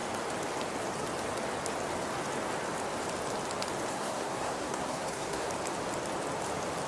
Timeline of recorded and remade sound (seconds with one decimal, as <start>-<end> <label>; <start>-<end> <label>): 0.0-3.9 recorded; 3.9-5.5 remade; 5.5-6.9 recorded